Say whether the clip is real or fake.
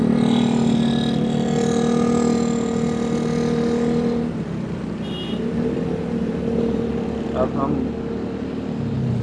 real